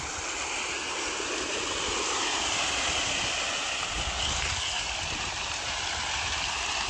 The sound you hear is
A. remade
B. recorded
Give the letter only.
B